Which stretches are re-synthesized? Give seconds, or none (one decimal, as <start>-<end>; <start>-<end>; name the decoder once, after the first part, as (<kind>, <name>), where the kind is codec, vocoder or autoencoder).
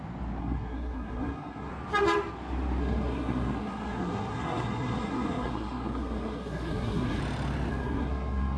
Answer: 0.4-1.7 (codec, SNAC); 2.8-7.2; 7.7-8.6